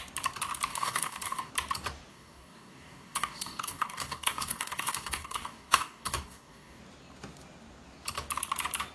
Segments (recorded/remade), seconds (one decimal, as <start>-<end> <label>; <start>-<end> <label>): 0.0-0.7 recorded; 0.7-1.5 remade; 1.5-2.1 recorded; 2.1-6.8 remade; 6.8-8.9 recorded